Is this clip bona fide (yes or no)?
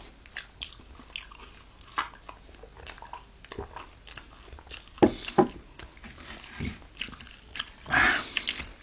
yes